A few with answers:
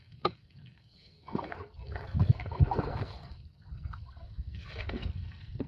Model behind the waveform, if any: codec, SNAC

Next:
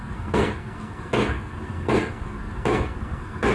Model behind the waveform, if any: codec, SNAC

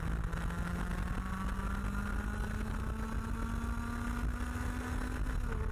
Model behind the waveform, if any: none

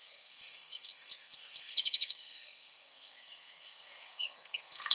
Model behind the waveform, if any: codec, SNAC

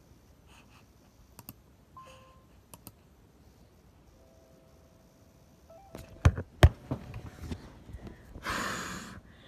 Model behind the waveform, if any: none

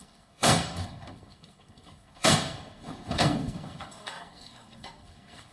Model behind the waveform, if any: codec, SNAC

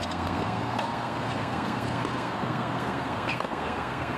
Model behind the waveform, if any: codec, SNAC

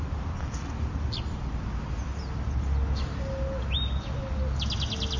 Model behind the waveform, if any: none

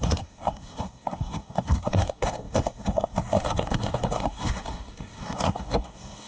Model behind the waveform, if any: codec, SNAC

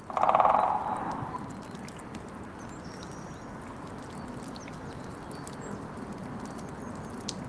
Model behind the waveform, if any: none